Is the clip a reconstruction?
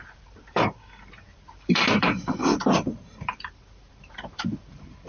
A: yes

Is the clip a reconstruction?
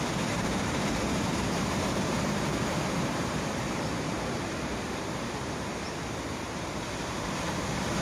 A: yes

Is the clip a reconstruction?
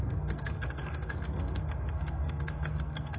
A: yes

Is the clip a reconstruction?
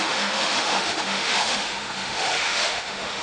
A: yes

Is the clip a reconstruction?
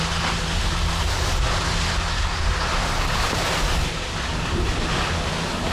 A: no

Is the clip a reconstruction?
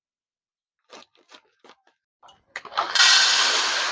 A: no